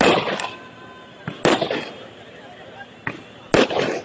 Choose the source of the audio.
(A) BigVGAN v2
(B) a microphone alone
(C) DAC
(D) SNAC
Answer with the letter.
B